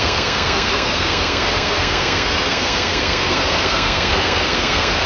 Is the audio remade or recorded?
remade